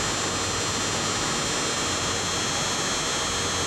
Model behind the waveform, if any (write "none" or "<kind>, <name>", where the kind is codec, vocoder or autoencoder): none